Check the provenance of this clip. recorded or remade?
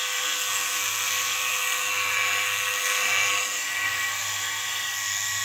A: remade